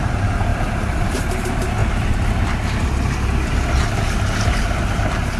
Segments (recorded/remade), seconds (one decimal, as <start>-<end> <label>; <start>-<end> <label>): 0.0-5.4 recorded